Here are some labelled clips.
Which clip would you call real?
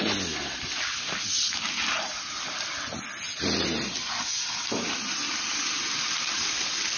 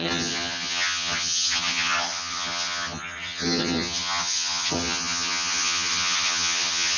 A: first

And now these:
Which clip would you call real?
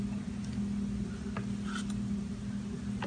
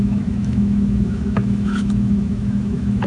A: first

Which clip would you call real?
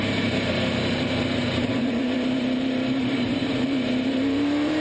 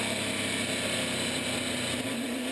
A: second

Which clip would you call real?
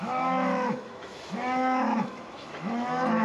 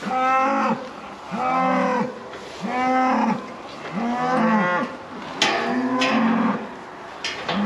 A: second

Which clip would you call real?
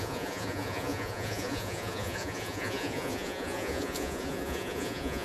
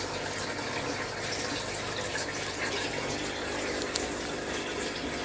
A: second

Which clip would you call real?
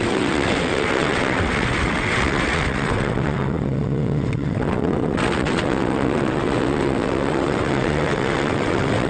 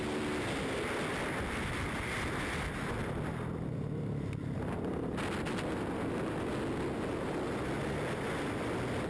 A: second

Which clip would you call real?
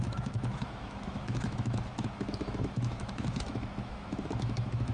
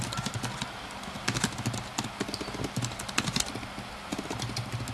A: second